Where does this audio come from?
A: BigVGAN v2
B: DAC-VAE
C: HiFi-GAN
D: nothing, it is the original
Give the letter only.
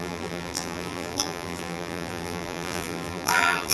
A